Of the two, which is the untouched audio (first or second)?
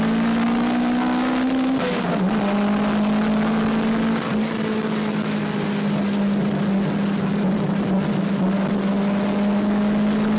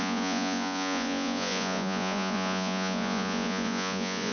first